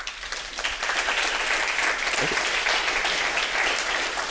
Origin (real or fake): real